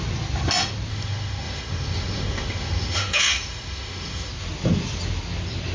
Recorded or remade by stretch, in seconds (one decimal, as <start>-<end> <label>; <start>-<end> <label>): 0.0-0.9 recorded; 0.9-4.3 remade; 4.3-5.7 recorded